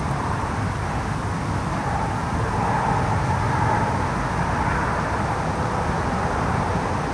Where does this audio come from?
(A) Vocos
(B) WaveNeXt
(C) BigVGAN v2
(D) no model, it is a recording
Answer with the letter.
D